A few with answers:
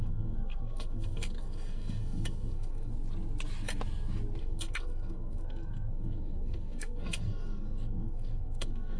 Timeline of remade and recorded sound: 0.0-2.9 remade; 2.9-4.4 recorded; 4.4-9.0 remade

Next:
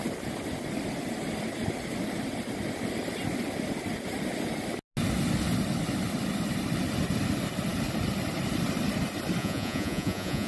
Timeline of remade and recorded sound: 0.0-9.4 recorded; 9.4-10.5 remade

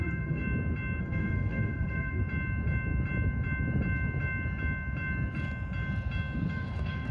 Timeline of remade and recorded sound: 0.0-0.4 remade; 0.4-1.0 recorded; 1.0-2.2 remade; 2.2-6.5 recorded; 6.5-7.1 remade

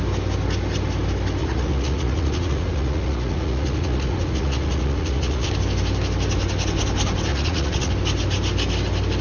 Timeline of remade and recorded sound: 0.0-1.4 recorded; 1.4-5.5 remade; 5.5-7.3 recorded; 7.3-7.9 remade; 7.9-9.2 recorded

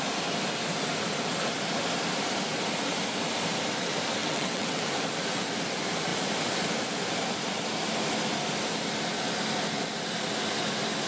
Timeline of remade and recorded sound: 0.0-4.2 recorded; 4.2-4.8 remade; 4.8-11.1 recorded

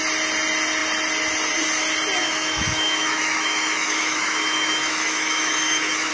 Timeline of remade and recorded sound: 0.0-2.2 recorded; 2.2-6.1 remade

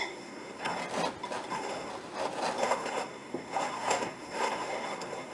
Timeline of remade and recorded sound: 0.0-0.8 remade; 0.8-1.5 recorded; 1.5-1.9 remade; 1.9-2.6 recorded; 2.6-5.3 remade

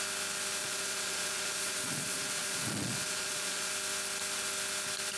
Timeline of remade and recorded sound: 0.0-0.6 recorded; 0.6-3.7 remade; 3.7-5.2 recorded